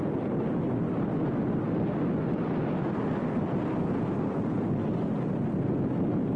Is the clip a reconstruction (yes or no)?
no